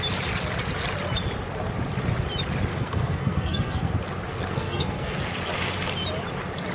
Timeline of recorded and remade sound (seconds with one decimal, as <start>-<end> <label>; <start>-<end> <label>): 0.0-2.7 recorded; 2.7-3.9 remade; 3.9-4.3 recorded; 4.3-5.2 remade; 5.2-6.7 recorded